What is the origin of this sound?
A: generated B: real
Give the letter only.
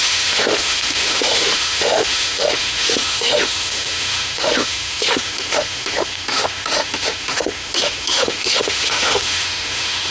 A